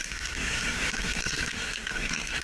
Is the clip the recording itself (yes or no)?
no